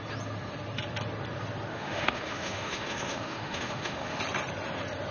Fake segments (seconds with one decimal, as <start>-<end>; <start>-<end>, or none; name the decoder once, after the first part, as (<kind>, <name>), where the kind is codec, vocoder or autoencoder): 1.7-4.2 (autoencoder, DAC-VAE)

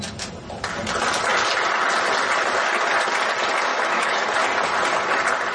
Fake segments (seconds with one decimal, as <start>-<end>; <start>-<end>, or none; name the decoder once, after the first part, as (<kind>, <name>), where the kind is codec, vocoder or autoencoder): 3.7-4.3 (autoencoder, DAC-VAE)

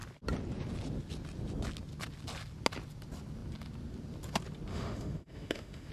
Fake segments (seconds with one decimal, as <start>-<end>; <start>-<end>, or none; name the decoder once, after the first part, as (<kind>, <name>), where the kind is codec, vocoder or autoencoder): 4.7-5.9 (autoencoder, DAC-VAE)

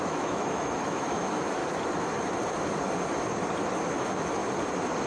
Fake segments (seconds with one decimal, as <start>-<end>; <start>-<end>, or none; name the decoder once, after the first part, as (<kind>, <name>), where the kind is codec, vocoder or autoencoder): 0.0-1.6 (autoencoder, DAC-VAE); 3.9-4.4

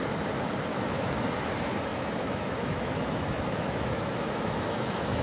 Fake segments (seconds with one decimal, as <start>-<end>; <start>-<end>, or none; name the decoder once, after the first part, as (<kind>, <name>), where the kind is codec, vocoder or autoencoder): 0.7-1.5 (autoencoder, DAC-VAE); 1.9-5.2

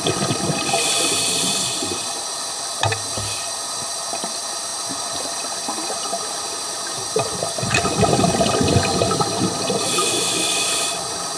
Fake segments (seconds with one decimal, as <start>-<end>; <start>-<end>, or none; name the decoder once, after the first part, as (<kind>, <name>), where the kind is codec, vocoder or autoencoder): 10.0-10.7 (autoencoder, DAC-VAE)